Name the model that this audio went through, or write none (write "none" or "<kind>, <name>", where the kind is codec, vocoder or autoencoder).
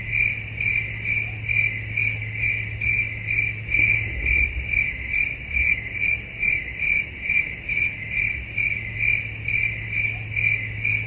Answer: none